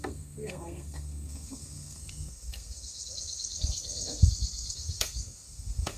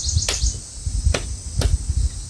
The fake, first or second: first